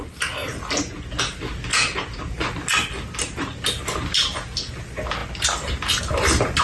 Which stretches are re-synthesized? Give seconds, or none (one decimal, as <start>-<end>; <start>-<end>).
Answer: none